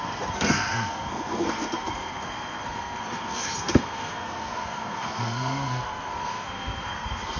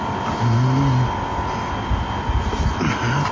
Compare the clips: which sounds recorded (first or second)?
second